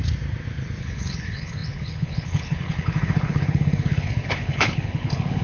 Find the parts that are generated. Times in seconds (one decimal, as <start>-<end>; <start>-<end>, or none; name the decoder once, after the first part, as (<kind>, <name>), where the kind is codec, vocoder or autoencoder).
0.8-5.4 (codec, HILCodec)